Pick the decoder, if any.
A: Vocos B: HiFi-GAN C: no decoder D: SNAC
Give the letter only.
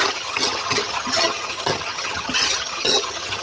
B